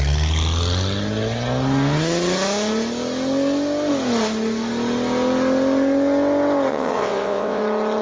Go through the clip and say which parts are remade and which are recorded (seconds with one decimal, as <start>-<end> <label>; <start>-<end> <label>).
0.0-6.7 recorded; 6.7-7.6 remade; 7.6-8.0 recorded